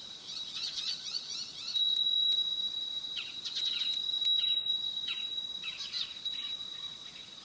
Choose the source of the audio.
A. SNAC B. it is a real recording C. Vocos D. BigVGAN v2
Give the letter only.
C